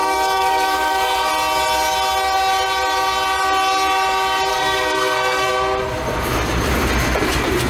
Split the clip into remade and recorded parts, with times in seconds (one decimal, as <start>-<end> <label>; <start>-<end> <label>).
0.0-1.3 remade; 1.3-4.5 recorded; 4.5-5.5 remade; 5.5-7.7 recorded